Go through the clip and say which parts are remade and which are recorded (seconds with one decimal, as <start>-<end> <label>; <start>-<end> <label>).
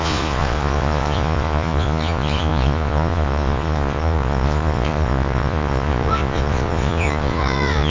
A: 0.0-7.9 remade